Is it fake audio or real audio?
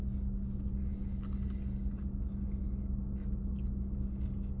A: real